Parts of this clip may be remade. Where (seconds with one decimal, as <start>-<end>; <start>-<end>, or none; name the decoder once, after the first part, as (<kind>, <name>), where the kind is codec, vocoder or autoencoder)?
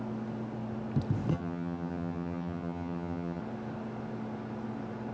1.3-3.4 (vocoder, HiFi-GAN)